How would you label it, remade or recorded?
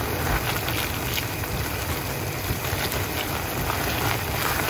recorded